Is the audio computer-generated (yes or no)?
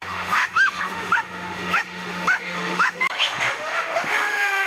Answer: yes